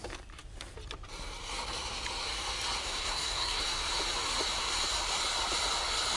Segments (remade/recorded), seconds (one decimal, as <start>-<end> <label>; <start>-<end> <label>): 0.0-2.8 recorded; 2.8-3.6 remade; 3.6-6.2 recorded